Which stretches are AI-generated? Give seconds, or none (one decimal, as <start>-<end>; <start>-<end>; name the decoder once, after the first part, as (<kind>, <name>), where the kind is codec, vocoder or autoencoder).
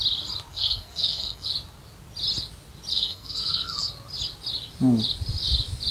0.5-1.5 (codec, SNAC); 2.9-3.9